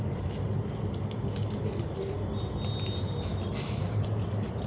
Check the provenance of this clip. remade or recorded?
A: recorded